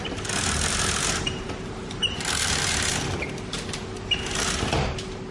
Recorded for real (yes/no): yes